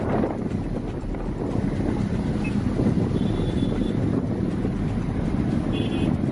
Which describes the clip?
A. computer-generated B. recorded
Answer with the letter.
B